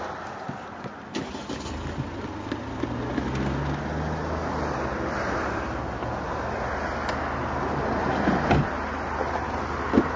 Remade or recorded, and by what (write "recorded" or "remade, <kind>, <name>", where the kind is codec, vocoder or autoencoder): recorded